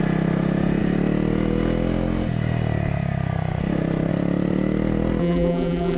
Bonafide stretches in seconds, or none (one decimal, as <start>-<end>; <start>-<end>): 0.0-5.2